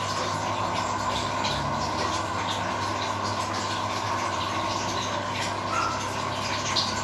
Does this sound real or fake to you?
real